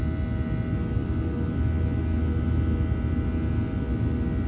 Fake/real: real